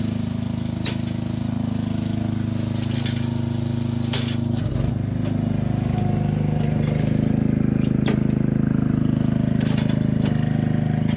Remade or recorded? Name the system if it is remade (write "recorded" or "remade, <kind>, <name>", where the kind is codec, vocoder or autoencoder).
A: recorded